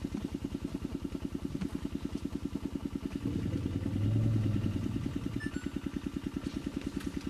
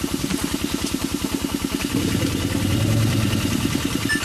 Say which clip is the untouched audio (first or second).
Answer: first